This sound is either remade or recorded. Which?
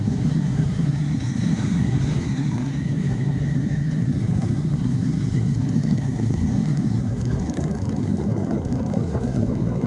remade